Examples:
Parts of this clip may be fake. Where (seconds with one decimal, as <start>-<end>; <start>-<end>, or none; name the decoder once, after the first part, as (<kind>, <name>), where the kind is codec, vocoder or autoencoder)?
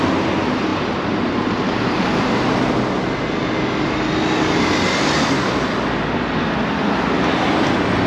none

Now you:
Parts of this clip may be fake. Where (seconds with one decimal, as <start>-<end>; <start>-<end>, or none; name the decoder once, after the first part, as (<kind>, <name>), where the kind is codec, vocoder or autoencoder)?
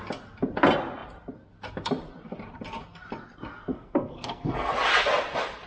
3.7-4.7 (codec, SNAC)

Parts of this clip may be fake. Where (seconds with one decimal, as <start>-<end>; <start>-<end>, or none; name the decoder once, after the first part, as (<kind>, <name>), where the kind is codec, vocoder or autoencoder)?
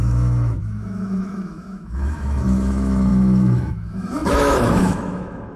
0.0-5.6 (autoencoder, DAC-VAE)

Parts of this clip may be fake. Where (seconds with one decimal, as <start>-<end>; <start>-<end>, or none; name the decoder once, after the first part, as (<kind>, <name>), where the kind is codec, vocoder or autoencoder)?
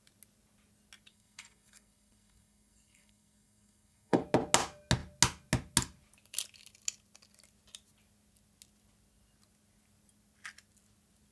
1.1-4.2 (codec, SNAC)